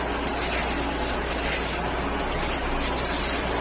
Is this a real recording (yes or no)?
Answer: yes